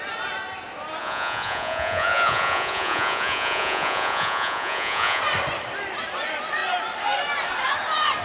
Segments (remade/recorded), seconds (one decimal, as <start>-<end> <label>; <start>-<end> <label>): 0.0-1.0 recorded; 1.0-5.2 remade; 5.2-8.2 recorded